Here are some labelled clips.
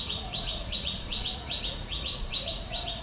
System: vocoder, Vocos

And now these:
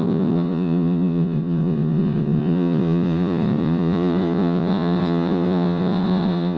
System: vocoder, Vocos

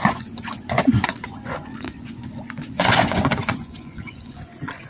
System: vocoder, Vocos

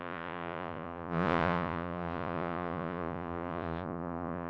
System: vocoder, Vocos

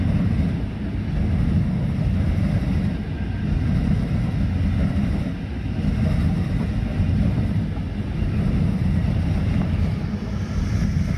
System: none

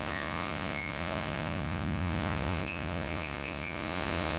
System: vocoder, Vocos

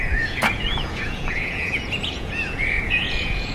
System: vocoder, Vocos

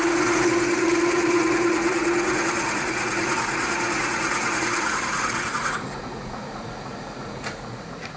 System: vocoder, Vocos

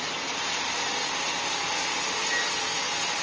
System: none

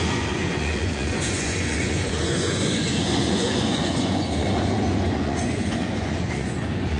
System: vocoder, Vocos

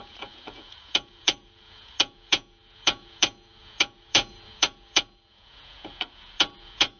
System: vocoder, Vocos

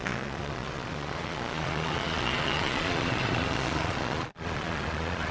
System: vocoder, Vocos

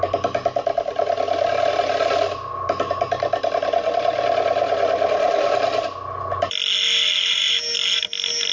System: none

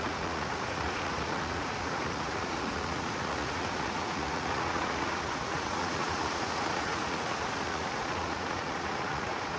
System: vocoder, Vocos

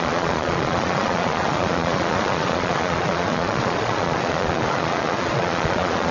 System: vocoder, Vocos